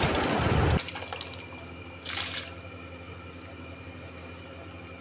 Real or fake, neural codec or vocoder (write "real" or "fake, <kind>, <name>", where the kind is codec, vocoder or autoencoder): real